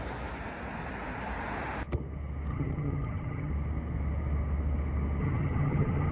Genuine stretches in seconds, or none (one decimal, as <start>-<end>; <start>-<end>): 0.0-2.5; 3.5-5.2